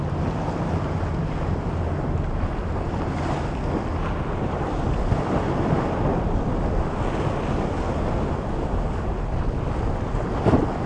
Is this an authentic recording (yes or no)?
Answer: yes